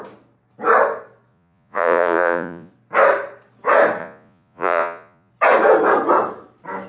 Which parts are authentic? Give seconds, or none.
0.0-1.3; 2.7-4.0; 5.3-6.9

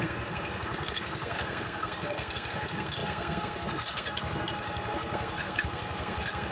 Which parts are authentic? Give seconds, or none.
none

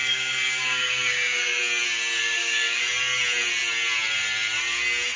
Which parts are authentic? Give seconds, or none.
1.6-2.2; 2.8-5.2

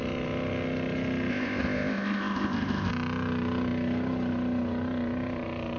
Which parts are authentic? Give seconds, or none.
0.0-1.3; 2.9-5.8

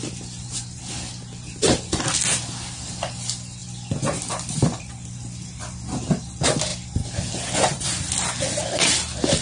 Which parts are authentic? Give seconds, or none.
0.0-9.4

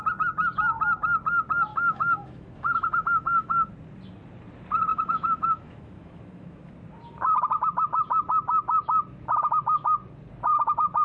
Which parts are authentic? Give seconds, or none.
0.0-1.7; 3.7-4.9; 6.7-11.0

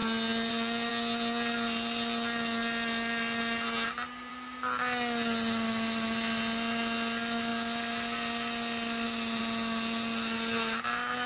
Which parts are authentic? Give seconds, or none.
0.0-11.3